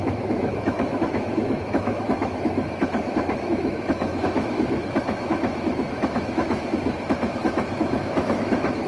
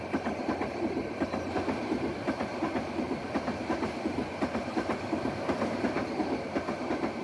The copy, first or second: first